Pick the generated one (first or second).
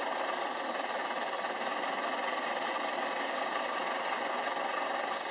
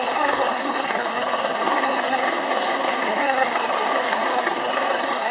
second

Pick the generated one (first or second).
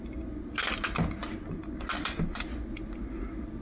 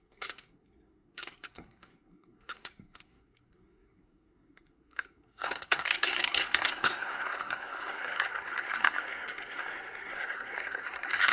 second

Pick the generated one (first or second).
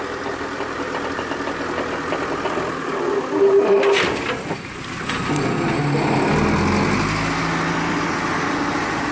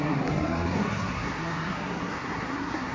second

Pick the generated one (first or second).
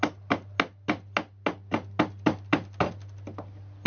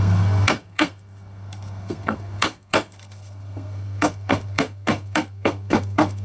second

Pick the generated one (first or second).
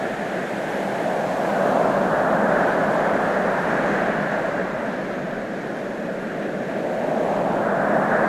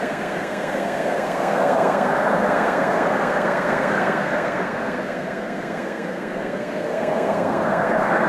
second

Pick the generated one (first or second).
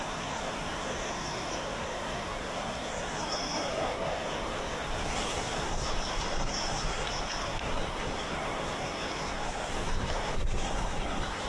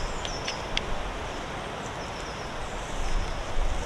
first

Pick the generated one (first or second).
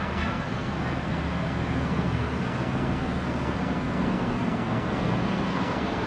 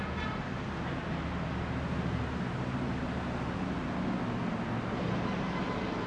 first